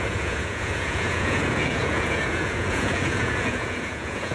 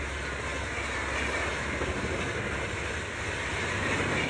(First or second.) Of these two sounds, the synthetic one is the first